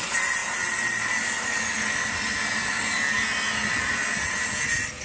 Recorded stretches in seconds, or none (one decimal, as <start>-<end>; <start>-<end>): 0.0-5.0

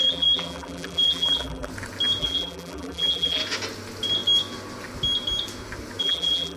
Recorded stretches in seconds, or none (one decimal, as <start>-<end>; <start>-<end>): 1.7-2.2; 3.4-6.0

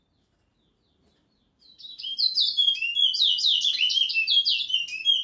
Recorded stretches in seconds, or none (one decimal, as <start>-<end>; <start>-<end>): 0.0-0.5; 3.0-5.2